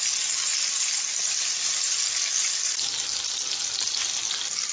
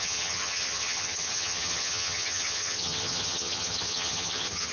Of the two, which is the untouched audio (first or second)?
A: first